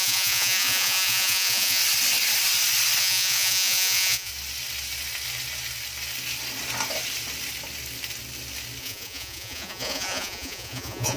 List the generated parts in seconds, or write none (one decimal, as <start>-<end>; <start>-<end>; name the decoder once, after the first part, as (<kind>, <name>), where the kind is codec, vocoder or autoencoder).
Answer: 0.0-1.8 (vocoder, Vocos); 3.0-4.3; 8.8-11.2